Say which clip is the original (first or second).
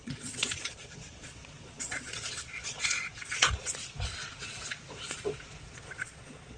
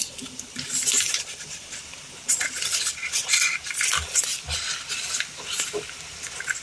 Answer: second